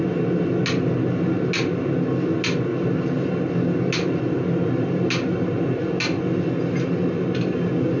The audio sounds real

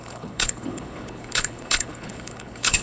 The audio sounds fake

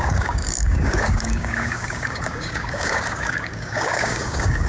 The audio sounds fake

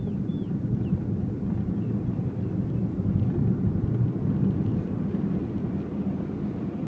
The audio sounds real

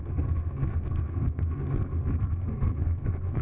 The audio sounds fake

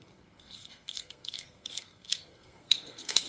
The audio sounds fake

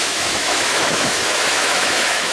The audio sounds fake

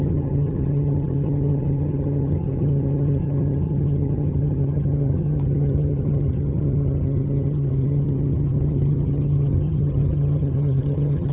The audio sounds fake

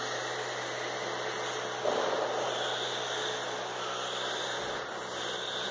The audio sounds real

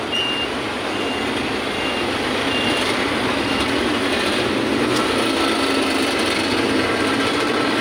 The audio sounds real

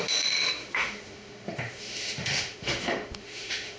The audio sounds fake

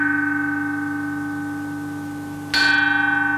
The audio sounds real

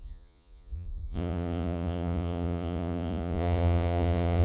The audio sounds fake